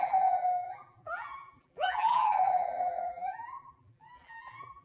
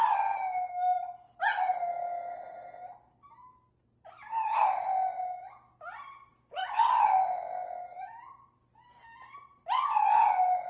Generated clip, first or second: first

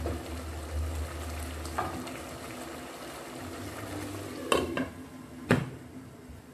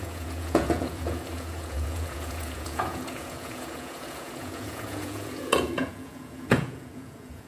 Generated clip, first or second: second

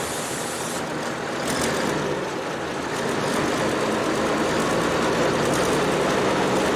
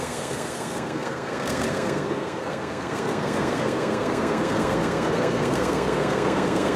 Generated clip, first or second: second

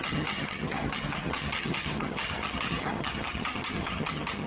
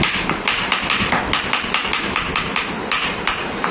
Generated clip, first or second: first